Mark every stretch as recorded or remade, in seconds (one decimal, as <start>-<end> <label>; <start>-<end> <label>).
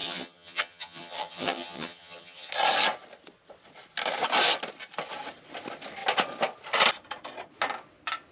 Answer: 0.0-2.5 remade; 2.5-8.3 recorded